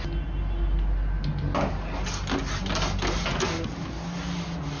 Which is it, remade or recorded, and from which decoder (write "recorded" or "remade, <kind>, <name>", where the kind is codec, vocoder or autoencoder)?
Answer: recorded